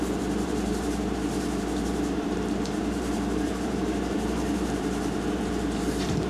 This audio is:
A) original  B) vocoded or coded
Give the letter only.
B